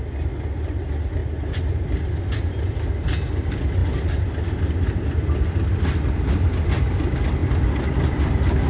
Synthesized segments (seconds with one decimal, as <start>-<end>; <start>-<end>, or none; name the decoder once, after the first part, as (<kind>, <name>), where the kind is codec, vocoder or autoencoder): 1.2-2.2 (vocoder, BigVGAN v2)